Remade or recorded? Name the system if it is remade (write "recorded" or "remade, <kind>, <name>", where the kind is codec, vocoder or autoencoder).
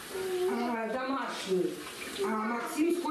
recorded